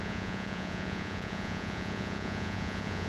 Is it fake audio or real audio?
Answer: fake